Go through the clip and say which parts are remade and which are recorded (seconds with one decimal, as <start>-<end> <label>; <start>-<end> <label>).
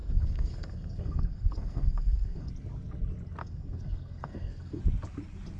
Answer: 0.0-2.5 remade; 2.5-3.4 recorded; 3.4-4.8 remade; 4.8-5.6 recorded